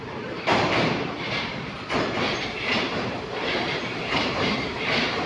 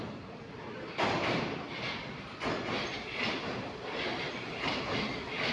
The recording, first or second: second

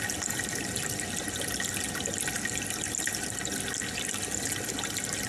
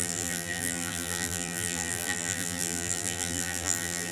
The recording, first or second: first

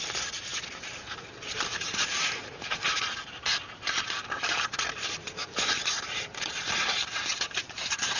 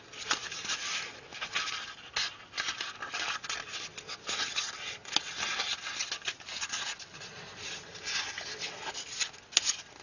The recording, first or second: second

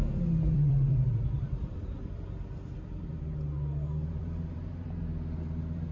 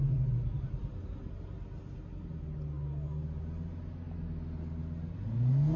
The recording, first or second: second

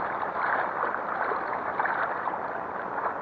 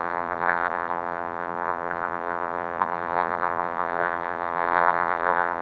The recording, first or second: first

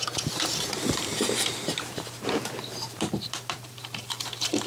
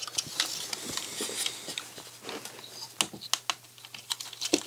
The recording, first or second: second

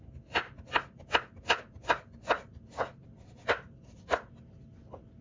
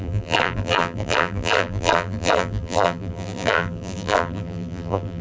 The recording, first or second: first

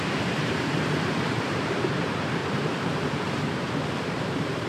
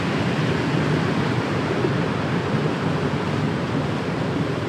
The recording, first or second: second